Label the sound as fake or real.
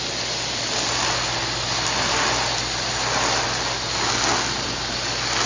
real